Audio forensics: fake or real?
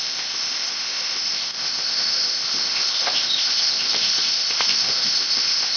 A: fake